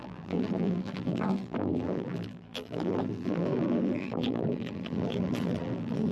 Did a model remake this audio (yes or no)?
yes